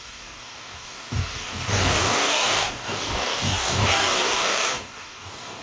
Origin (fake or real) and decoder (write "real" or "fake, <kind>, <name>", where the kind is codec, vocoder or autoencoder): fake, codec, DAC